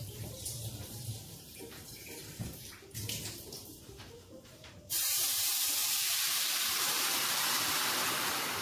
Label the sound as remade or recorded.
remade